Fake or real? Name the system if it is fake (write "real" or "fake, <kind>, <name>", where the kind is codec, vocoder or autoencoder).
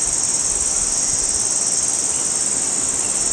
real